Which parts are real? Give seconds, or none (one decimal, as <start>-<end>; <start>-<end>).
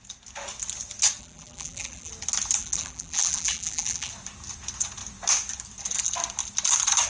0.0-1.2; 2.1-2.6; 4.1-7.1